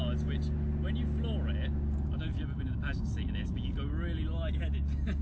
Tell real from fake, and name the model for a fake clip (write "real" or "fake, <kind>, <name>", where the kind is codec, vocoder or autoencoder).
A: real